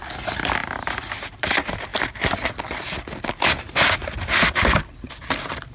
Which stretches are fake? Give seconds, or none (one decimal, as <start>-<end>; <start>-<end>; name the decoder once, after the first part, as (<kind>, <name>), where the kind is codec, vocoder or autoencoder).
none